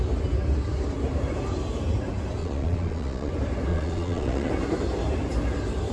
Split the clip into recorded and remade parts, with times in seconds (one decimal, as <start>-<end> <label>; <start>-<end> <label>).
0.0-2.4 recorded; 2.4-3.3 remade; 3.3-3.7 recorded; 3.7-4.5 remade; 4.5-5.9 recorded